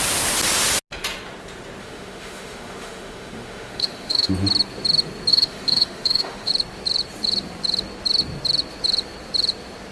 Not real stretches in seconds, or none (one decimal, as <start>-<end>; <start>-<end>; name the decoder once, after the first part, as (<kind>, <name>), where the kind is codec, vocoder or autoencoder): 1.8-4.3 (autoencoder, DAC-VAE); 5.3-6.5